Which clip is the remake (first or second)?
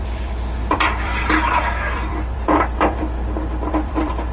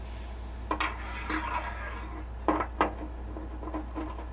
first